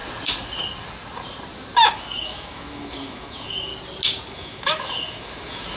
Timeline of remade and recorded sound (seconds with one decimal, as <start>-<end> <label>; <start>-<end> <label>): 0.0-1.9 recorded; 1.9-3.7 remade; 3.7-4.3 recorded; 4.3-5.8 remade